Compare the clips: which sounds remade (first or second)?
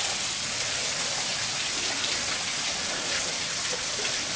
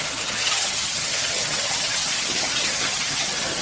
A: second